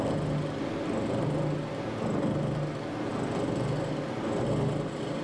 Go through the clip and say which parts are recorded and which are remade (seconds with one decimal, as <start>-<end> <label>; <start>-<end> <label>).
0.0-5.2 recorded